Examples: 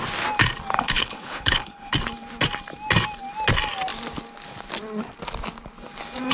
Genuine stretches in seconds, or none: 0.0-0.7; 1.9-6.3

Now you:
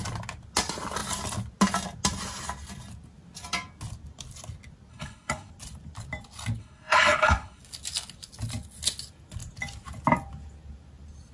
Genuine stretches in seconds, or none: 0.0-4.9; 5.5-6.6; 7.6-11.3

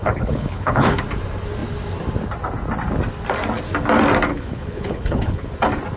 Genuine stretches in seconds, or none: 1.0-4.3; 5.5-6.0